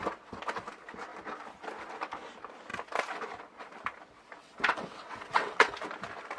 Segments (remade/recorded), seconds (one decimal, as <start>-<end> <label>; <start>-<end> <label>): 0.0-4.4 recorded; 4.4-5.7 remade; 5.7-6.4 recorded